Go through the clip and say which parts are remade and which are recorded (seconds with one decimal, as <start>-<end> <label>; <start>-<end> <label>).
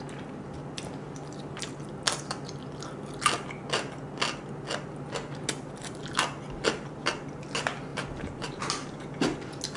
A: 0.0-7.9 recorded; 7.9-8.6 remade; 8.6-9.8 recorded